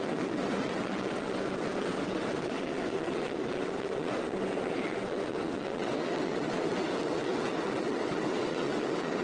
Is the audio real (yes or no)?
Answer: no